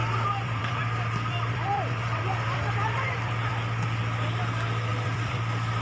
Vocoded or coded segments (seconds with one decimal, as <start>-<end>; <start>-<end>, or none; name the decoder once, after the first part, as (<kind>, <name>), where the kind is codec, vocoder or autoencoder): 0.0-3.5 (vocoder, BigVGAN v2); 4.9-5.8